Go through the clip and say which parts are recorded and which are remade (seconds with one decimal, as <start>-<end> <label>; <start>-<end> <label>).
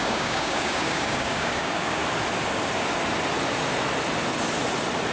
0.0-2.0 remade; 2.0-5.1 recorded